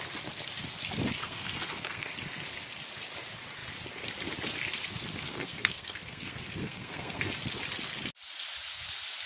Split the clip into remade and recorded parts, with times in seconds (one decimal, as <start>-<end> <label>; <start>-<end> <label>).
0.0-1.2 recorded; 1.2-2.1 remade; 2.1-5.3 recorded; 5.3-7.2 remade; 7.2-9.3 recorded